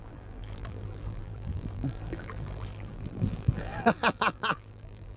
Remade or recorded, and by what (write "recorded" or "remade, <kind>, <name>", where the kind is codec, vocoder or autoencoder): remade, vocoder, BigVGAN v2